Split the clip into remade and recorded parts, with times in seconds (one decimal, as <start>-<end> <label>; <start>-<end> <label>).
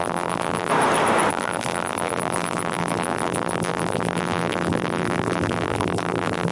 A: 0.0-0.7 remade; 0.7-1.3 recorded; 1.3-6.5 remade